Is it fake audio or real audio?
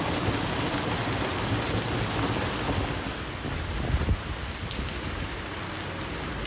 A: real